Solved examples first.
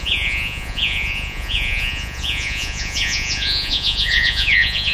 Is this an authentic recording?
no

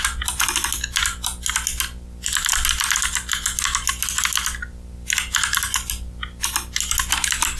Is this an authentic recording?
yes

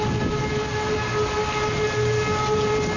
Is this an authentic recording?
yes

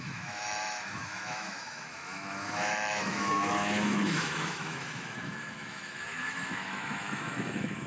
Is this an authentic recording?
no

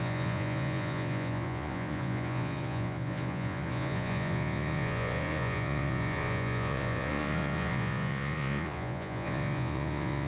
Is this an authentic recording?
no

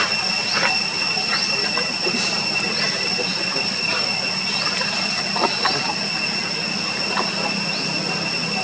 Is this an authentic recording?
yes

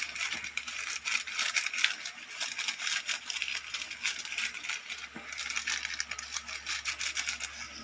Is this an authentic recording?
yes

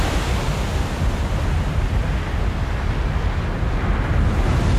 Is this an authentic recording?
yes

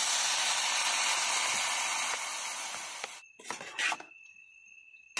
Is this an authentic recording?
yes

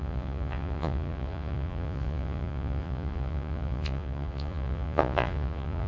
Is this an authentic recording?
no